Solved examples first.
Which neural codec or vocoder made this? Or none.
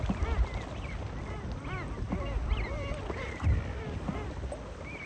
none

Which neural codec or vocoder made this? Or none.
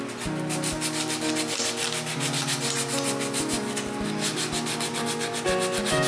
none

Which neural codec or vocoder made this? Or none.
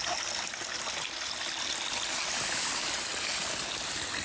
none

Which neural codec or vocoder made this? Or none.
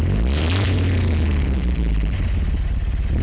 vocoder, BigVGAN v2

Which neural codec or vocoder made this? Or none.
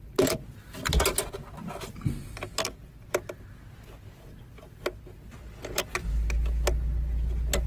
none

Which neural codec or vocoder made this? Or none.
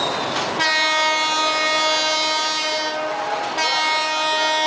none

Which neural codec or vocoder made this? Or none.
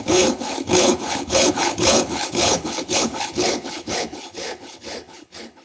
codec, HILCodec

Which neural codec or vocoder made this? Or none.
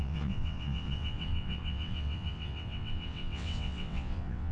vocoder, WaveNeXt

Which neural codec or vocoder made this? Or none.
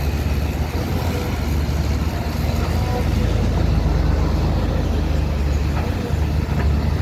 none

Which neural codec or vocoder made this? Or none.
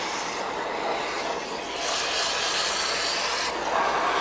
none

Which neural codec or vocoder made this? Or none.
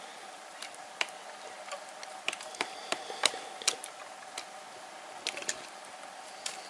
none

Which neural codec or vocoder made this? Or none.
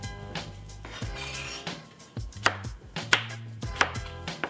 vocoder, BigVGAN v2